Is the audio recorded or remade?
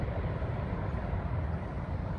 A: recorded